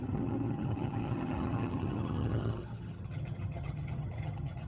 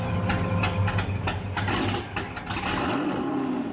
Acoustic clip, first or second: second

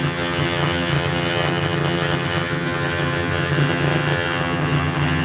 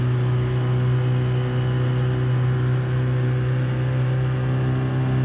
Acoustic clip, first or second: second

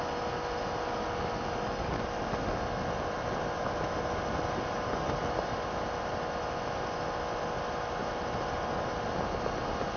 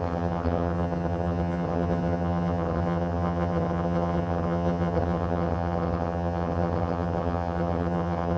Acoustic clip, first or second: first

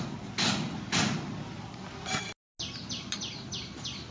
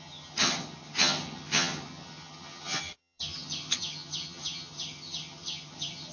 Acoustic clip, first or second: first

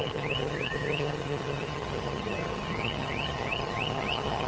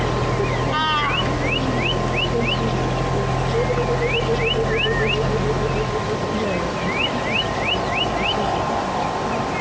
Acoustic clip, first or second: second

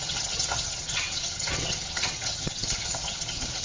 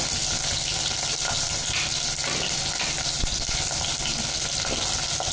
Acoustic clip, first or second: second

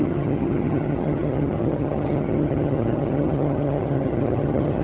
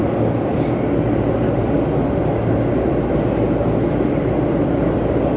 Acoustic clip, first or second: second